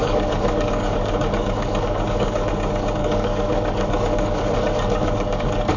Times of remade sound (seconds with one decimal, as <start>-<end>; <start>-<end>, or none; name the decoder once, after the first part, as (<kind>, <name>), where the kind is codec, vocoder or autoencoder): 0.0-2.5 (codec, DAC); 3.0-5.8